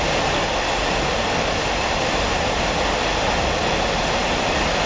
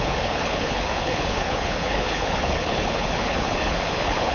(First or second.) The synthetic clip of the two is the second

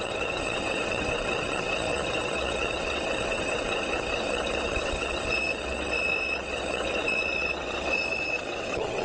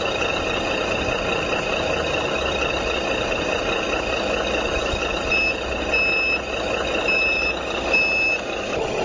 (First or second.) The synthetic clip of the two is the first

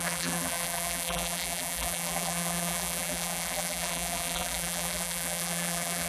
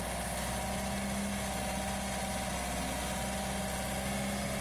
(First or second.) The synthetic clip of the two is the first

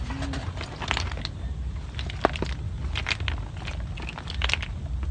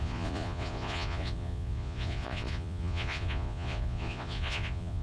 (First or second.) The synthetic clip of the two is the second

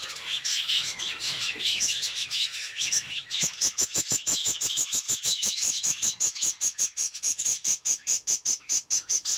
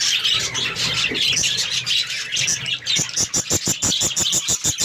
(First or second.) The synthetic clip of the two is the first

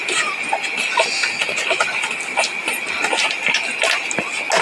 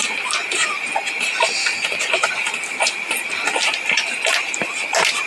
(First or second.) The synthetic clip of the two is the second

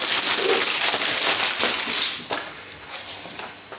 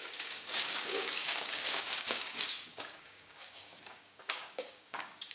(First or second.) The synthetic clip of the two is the second